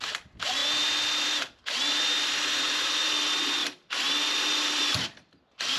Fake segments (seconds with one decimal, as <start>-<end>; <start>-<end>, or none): 0.0-0.6; 1.2-3.6; 4.3-5.8